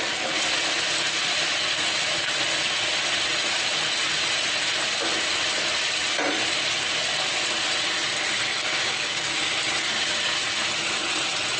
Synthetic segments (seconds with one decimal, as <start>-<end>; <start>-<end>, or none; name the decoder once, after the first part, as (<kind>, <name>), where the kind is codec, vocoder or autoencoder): 8.5-9.5 (codec, DAC)